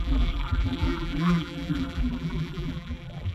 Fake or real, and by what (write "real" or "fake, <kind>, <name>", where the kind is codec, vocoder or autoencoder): fake, vocoder, BigVGAN v2